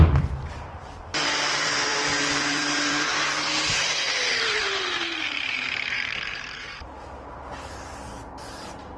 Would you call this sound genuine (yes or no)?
no